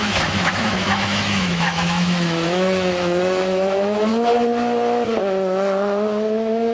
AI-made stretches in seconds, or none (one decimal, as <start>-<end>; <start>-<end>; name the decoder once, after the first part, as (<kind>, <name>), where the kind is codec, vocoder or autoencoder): 0.0-4.1 (autoencoder, DAC-VAE); 5.2-6.7